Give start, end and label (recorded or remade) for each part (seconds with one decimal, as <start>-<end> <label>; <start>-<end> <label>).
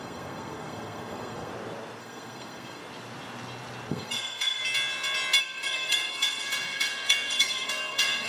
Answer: 0.0-1.5 remade; 1.5-2.0 recorded; 2.0-2.8 remade; 2.8-3.9 recorded; 3.9-4.6 remade; 4.6-5.4 recorded; 5.4-8.3 remade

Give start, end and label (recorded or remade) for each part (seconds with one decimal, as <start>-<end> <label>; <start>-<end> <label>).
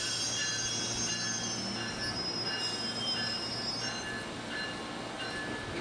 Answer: 0.0-5.8 recorded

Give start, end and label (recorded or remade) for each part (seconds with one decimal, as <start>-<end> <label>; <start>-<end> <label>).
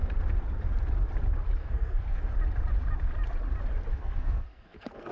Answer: 0.0-1.6 recorded; 1.6-2.2 remade; 2.2-3.9 recorded; 3.9-5.1 remade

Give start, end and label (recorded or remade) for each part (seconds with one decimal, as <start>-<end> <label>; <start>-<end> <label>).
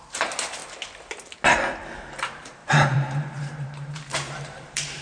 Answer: 0.0-0.6 remade; 0.6-2.0 recorded; 2.0-5.0 remade